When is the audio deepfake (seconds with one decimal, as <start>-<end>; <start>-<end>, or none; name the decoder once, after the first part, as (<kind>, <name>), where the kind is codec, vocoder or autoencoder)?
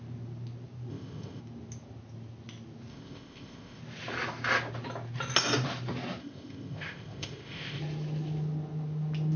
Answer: 0.9-1.4 (codec, ZipCodec); 2.9-3.8; 6.2-7.8